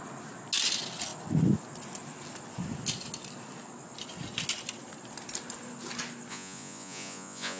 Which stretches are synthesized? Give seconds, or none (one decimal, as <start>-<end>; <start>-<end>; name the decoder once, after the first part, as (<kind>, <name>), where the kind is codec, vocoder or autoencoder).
6.3-7.6 (vocoder, Vocos)